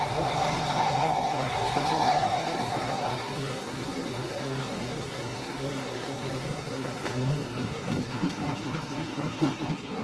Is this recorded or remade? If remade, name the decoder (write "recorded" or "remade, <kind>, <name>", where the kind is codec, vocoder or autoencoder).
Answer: remade, codec, SNAC